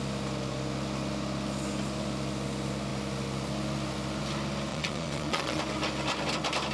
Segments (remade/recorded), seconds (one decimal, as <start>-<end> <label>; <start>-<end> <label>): 0.0-4.7 recorded; 4.7-5.6 remade; 5.6-6.7 recorded

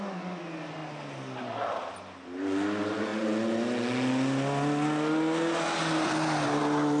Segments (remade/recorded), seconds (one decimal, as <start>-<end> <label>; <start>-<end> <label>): 0.0-7.0 recorded